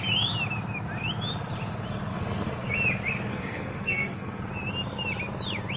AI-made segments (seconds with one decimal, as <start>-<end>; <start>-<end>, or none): 2.1-2.7; 3.3-4.4